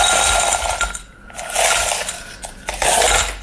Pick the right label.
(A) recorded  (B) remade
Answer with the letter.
A